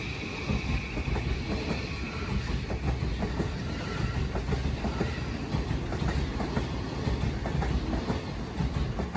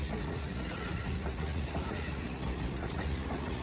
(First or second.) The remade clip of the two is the second